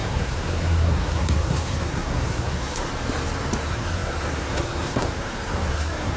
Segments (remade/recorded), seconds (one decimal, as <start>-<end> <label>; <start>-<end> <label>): 0.0-2.9 remade; 2.9-3.6 recorded; 3.6-6.2 remade